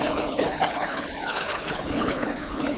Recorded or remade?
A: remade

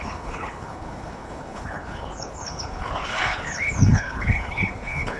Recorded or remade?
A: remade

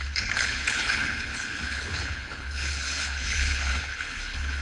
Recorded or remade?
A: remade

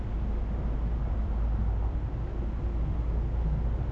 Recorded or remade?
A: recorded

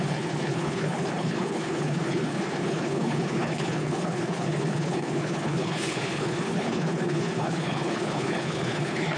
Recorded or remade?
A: remade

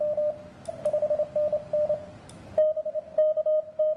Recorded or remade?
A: recorded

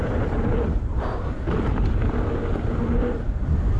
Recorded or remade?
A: recorded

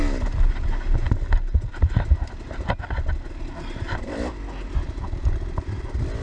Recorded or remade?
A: recorded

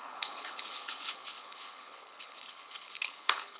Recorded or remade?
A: remade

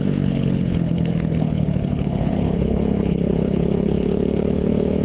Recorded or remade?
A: remade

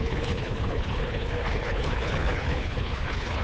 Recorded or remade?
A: remade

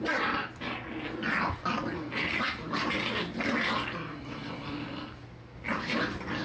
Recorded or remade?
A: recorded